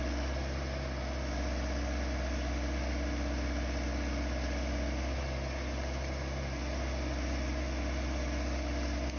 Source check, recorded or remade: recorded